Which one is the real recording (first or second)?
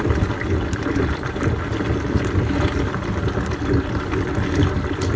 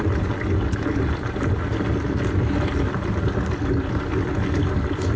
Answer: second